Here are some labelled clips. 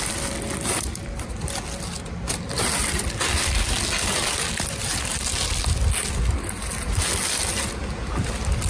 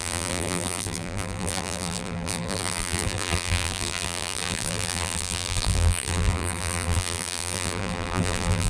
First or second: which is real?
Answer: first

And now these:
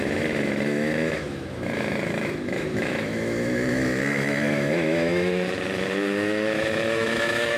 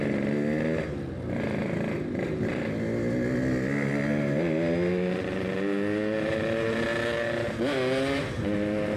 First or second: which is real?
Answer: second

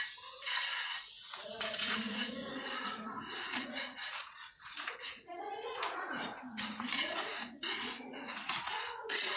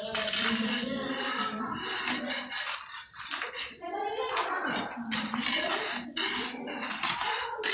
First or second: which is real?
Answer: second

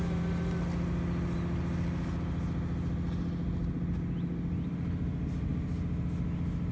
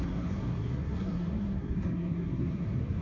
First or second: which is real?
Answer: first